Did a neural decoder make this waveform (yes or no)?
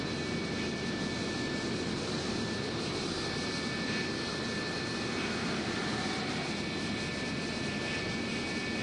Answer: no